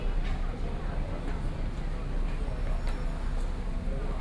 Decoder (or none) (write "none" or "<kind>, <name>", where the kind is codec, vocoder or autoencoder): none